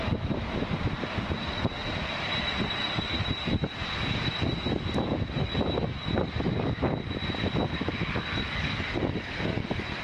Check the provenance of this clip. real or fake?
real